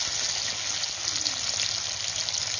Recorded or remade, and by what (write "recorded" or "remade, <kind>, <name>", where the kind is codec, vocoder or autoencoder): recorded